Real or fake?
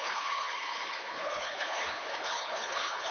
fake